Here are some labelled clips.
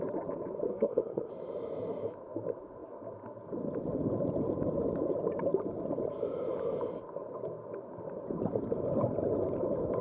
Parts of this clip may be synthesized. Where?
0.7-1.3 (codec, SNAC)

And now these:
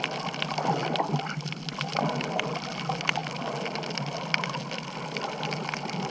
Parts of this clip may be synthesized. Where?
none

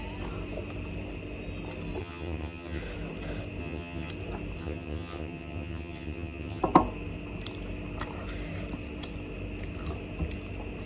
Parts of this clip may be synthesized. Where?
2.0-2.8 (vocoder, HiFi-GAN); 3.6-4.1; 4.6-6.6